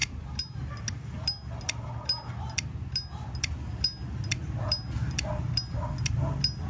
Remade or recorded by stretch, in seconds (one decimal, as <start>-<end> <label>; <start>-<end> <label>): 0.0-6.7 recorded